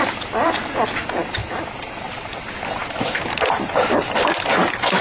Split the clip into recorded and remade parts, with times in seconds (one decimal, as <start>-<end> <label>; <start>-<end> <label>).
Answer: 0.0-5.0 remade